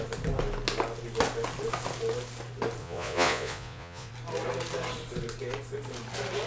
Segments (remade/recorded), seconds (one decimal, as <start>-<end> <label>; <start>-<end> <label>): 0.0-2.8 recorded; 2.8-4.1 remade; 4.1-6.5 recorded